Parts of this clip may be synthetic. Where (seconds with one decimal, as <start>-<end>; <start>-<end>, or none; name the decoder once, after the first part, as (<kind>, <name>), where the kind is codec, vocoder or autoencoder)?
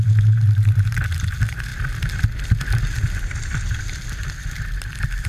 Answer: none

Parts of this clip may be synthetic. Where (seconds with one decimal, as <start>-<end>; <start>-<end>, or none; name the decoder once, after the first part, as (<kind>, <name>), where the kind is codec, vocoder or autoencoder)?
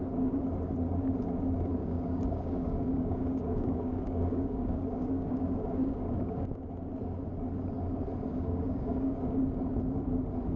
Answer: 1.8-6.6 (codec, DAC); 8.3-9.2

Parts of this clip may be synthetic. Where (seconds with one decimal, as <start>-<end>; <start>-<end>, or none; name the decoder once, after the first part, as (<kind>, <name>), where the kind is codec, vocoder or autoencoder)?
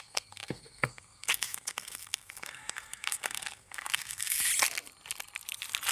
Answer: 0.0-4.5 (codec, SNAC)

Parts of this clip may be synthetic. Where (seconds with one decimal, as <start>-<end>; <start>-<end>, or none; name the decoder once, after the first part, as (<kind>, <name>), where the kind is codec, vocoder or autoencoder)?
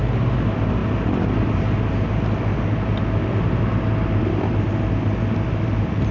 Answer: none